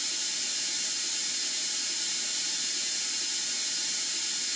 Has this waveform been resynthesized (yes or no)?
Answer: no